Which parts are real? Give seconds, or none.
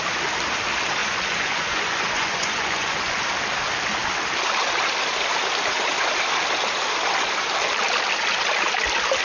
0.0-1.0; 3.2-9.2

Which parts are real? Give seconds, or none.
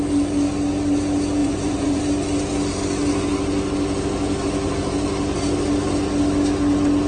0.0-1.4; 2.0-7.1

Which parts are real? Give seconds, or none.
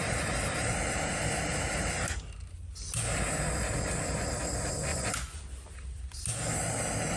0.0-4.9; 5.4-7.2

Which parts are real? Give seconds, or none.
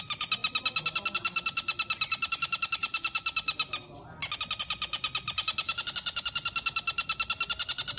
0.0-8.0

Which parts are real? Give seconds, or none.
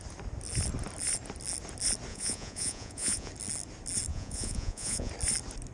0.0-2.1; 3.3-4.1; 5.1-5.7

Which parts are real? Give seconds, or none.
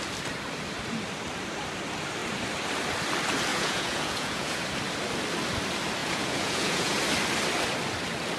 0.0-3.5; 4.6-6.0; 7.0-8.4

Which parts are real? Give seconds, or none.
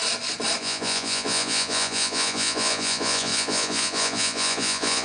0.0-0.6